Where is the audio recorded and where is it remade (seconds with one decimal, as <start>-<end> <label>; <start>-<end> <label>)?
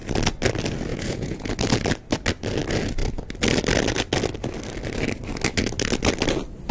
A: 0.0-0.9 recorded; 0.9-1.5 remade; 1.5-6.7 recorded